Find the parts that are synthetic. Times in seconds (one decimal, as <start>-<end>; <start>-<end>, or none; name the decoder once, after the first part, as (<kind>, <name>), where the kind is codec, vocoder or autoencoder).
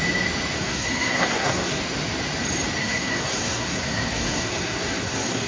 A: 0.5-1.8 (codec, SNAC); 2.8-5.5